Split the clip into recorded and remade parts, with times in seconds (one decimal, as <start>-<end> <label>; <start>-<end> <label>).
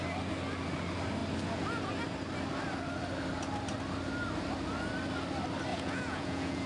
0.0-5.7 recorded; 5.7-6.7 remade